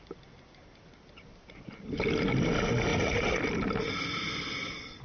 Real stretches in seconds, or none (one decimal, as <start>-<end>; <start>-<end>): 0.0-2.9; 3.4-5.0